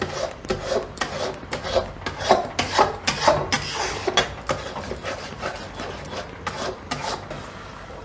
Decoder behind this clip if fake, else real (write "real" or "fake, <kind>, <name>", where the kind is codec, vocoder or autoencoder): real